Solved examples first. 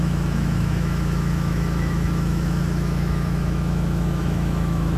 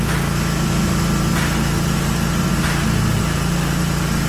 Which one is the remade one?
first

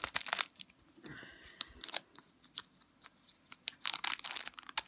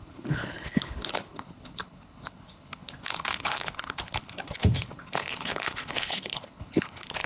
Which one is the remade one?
second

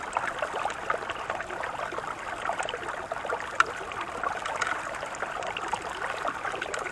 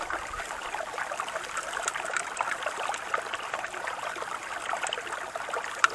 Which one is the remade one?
second